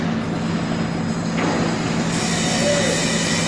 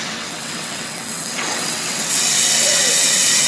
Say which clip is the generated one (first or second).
second